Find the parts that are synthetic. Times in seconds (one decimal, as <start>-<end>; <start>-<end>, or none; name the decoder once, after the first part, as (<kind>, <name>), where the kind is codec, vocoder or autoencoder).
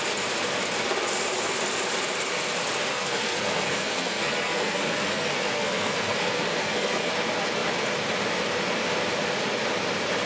2.9-7.1 (codec, SNAC)